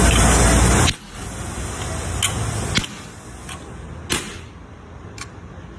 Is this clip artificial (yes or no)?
no